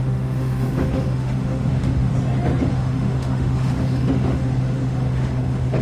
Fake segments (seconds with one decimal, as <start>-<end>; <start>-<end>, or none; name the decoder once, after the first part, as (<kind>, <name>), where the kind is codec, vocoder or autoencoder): 0.0-2.1 (autoencoder, DAC-VAE); 2.7-5.8